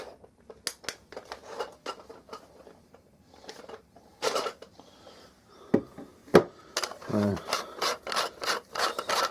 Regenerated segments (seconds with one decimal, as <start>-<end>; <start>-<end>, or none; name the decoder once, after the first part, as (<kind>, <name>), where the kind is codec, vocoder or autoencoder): 2.1-5.7 (vocoder, BigVGAN v2); 6.2-7.6